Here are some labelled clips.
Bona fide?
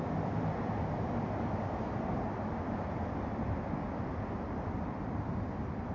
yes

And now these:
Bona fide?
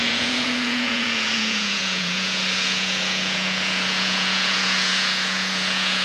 no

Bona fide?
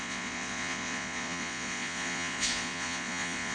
no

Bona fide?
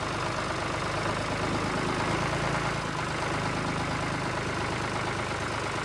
yes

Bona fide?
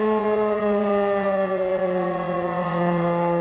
no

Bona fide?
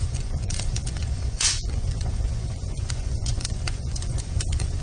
no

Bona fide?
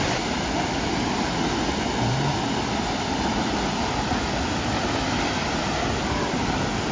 yes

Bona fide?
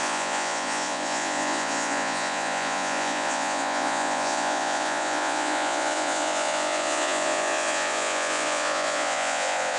no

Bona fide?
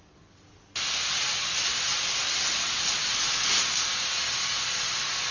yes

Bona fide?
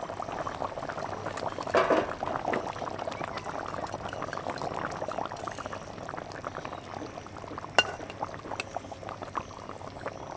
yes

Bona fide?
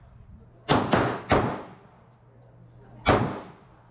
yes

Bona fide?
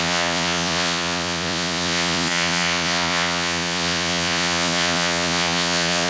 no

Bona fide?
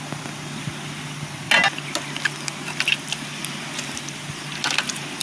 yes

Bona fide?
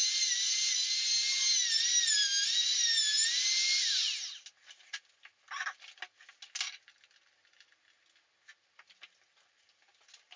yes